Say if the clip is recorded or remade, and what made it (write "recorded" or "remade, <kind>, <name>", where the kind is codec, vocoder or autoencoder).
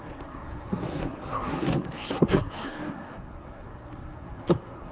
remade, codec, SNAC